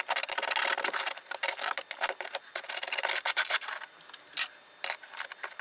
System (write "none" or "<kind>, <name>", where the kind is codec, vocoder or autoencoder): none